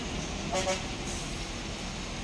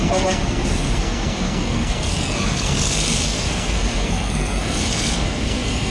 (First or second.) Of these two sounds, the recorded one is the first